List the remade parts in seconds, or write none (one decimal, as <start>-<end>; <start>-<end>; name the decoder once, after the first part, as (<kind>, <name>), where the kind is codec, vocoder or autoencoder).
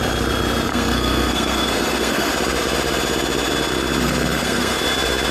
0.7-2.3 (codec, SNAC); 4.0-4.8